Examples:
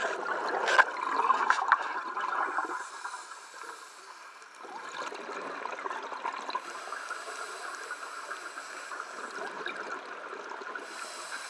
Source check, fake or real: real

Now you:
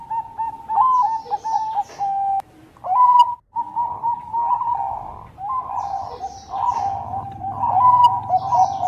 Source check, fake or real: real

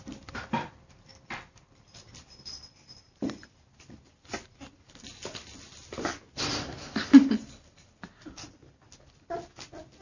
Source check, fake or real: real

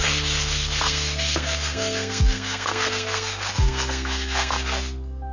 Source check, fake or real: fake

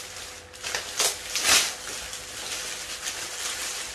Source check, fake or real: real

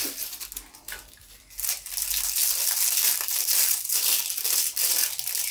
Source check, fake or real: real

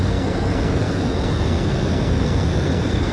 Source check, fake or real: fake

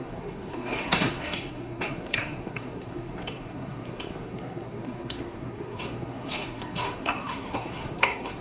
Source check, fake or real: fake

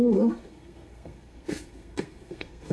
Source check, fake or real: fake